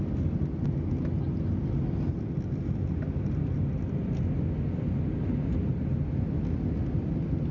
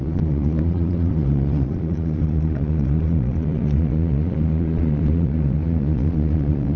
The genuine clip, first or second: first